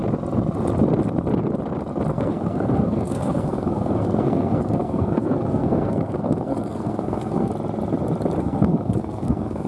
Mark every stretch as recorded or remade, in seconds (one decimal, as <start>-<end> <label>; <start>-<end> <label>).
0.0-2.1 recorded; 2.1-7.5 remade; 7.5-8.4 recorded; 8.4-9.7 remade